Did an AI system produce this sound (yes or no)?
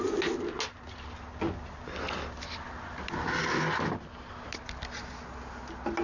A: no